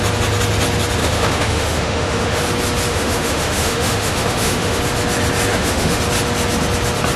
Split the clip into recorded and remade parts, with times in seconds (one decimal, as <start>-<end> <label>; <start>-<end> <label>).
0.0-1.0 recorded; 1.0-2.4 remade; 2.4-2.9 recorded; 2.9-4.8 remade; 4.8-5.5 recorded; 5.5-6.0 remade; 6.0-7.2 recorded